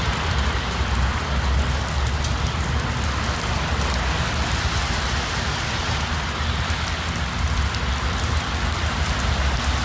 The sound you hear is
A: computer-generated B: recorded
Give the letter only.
B